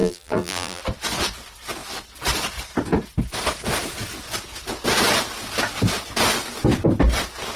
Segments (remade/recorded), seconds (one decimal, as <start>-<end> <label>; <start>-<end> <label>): 0.0-0.8 remade; 0.8-7.6 recorded

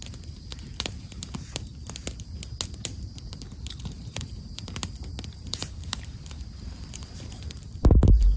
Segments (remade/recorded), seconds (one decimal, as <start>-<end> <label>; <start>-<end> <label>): 0.0-1.7 remade; 1.7-3.0 recorded; 3.0-8.4 remade

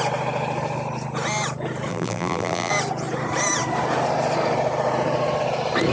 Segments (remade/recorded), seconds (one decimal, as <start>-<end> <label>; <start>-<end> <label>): 0.0-1.9 recorded; 1.9-2.7 remade; 2.7-5.9 recorded

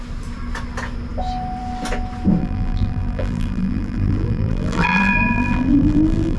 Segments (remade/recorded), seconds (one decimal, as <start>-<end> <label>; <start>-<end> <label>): 0.0-2.4 recorded; 2.4-6.4 remade

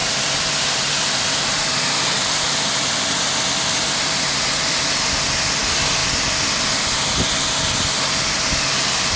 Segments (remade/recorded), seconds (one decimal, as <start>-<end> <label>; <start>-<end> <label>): 0.0-5.0 remade; 5.0-9.2 recorded

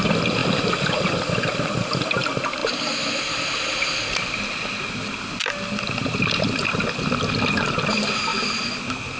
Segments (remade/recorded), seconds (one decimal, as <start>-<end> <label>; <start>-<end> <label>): 0.0-9.2 recorded